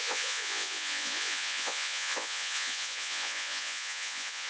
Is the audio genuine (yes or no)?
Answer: no